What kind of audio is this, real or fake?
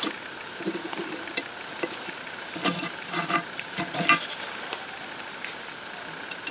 fake